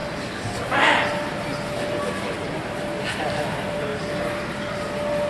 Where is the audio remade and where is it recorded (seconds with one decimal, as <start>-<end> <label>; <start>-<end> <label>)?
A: 0.0-5.3 recorded